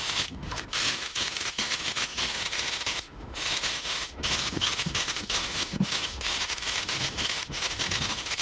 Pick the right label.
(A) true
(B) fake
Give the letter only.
B